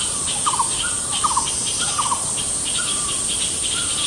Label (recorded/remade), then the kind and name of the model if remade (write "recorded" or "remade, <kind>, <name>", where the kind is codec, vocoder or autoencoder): recorded